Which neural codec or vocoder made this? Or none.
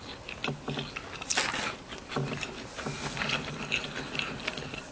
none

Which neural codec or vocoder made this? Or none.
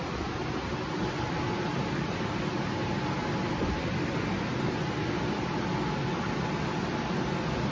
none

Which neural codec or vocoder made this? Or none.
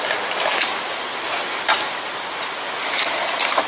none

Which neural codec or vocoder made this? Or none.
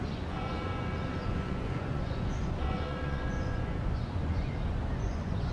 vocoder, Vocos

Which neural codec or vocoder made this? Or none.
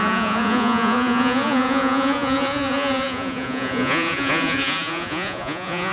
vocoder, Vocos